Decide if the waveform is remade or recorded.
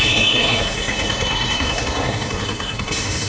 remade